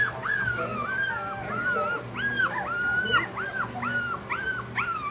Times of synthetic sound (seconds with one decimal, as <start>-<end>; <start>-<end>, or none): none